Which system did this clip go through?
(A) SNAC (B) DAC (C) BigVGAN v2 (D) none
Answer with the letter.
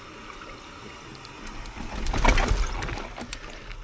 D